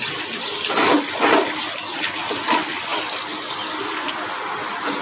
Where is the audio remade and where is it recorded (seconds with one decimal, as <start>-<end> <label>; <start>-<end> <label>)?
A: 0.0-5.0 recorded